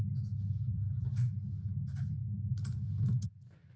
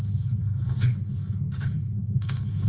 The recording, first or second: first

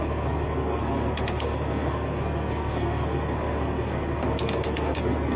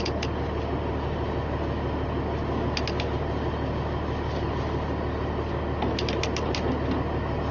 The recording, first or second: second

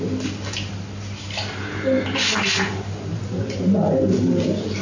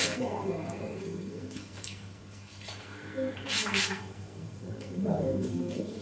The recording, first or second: first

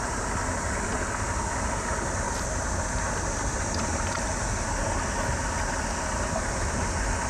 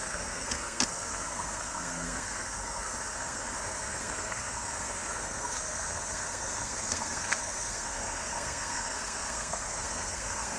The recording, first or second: first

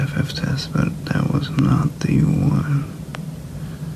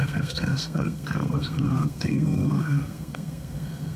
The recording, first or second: first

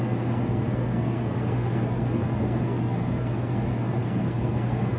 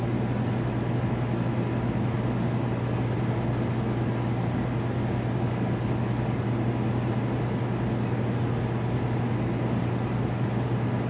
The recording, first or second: second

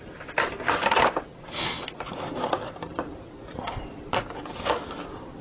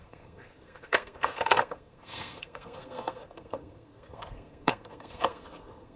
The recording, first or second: first